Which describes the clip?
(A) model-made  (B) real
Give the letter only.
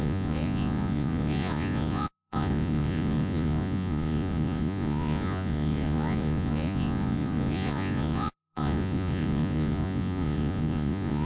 A